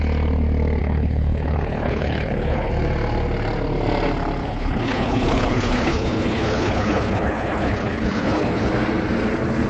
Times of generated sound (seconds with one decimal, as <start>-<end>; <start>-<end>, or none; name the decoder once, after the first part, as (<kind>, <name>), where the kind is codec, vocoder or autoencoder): 0.8-2.7 (codec, HILCodec); 4.4-8.7